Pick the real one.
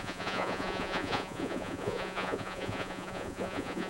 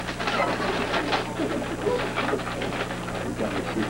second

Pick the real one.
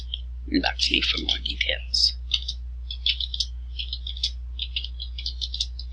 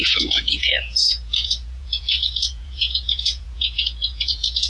first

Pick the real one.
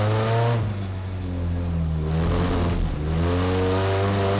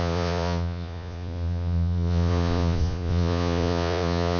first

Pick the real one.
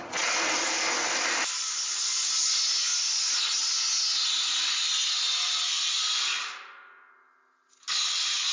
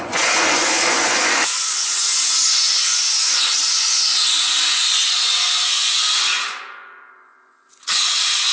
first